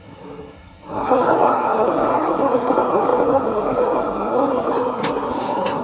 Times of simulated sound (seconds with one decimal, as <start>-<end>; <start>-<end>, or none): 0.0-5.8